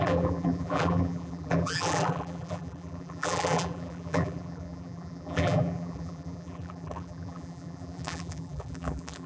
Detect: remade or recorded remade